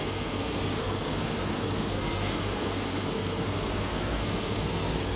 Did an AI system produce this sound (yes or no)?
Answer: yes